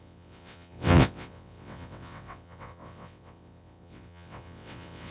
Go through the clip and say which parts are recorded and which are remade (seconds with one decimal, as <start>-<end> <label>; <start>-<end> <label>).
0.0-5.1 remade